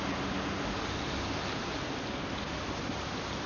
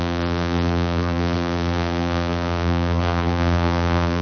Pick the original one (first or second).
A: first